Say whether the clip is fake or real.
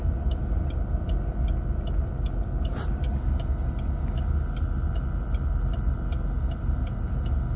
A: real